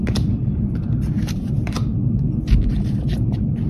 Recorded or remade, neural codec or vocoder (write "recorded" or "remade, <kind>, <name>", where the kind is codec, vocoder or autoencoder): remade, vocoder, BigVGAN v2